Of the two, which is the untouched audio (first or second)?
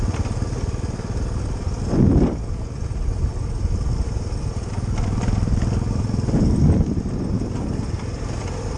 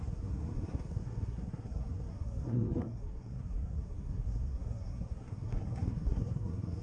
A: first